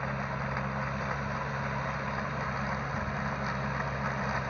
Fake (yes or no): no